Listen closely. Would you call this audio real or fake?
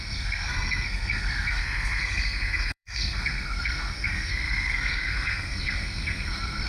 fake